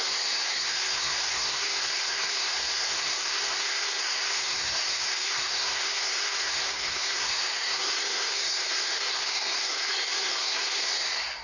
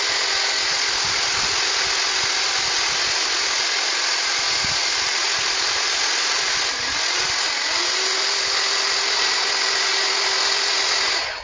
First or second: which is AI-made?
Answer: first